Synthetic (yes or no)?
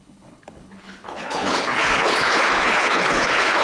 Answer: yes